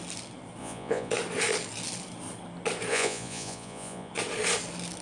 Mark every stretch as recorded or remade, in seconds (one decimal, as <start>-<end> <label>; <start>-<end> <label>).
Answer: 0.0-0.6 recorded; 0.6-1.1 remade; 1.1-2.9 recorded; 2.9-4.1 remade; 4.1-5.0 recorded